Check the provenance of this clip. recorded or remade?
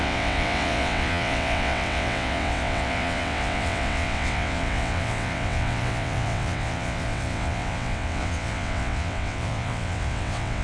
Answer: remade